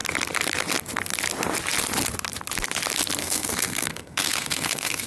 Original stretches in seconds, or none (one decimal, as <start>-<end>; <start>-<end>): 0.0-3.2